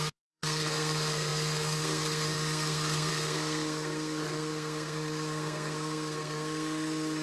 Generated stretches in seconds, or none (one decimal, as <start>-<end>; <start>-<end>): 0.0-7.2